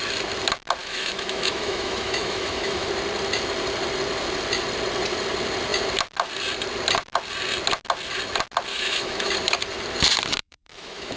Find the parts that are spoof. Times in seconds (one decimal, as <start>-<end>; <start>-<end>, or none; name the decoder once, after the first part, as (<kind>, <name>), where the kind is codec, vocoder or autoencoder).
0.8-2.9 (autoencoder, DAC-VAE); 8.7-9.3; 10.4-11.2